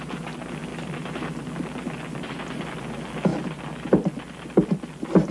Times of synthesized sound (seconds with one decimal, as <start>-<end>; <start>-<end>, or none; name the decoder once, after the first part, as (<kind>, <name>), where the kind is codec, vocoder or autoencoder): 0.7-2.9 (vocoder, BigVGAN v2); 3.3-4.1